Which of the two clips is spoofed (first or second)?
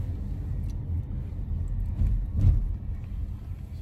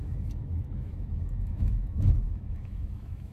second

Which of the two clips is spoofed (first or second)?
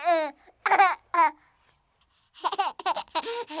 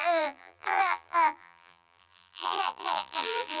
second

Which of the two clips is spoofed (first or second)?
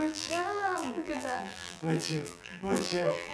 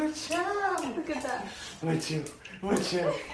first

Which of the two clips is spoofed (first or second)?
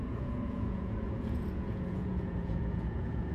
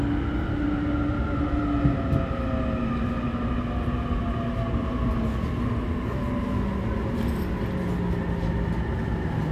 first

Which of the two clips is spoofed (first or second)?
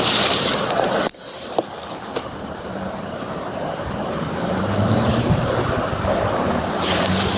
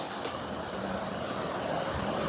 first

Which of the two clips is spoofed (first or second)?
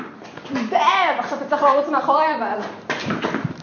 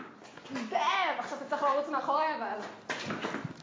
first